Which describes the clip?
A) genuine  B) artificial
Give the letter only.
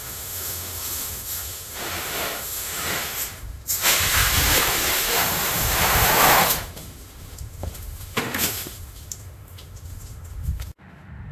B